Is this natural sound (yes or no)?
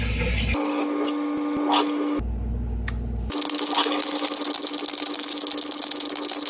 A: yes